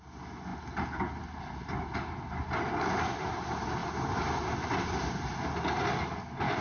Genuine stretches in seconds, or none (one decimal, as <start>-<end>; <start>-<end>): 0.0-6.6